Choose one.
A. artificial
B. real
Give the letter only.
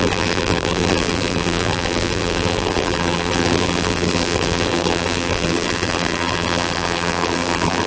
A